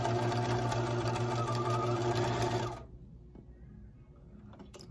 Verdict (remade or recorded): recorded